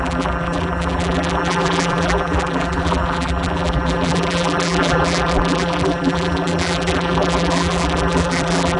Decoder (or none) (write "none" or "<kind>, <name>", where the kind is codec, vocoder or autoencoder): vocoder, BigVGAN v2